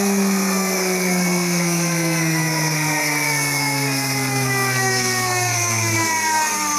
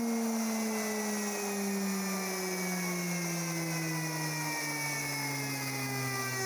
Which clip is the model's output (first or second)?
first